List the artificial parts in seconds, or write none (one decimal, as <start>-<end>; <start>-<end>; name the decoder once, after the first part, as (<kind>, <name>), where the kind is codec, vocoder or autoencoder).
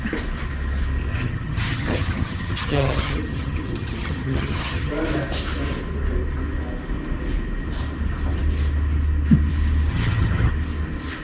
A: 1.1-4.9 (vocoder, HiFi-GAN); 9.9-10.5